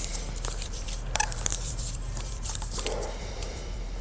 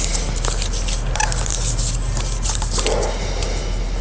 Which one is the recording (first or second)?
second